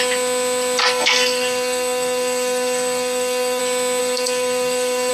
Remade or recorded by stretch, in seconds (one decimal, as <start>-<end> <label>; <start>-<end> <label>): 0.0-0.8 recorded; 0.8-3.6 remade; 3.6-4.0 recorded; 4.0-5.1 remade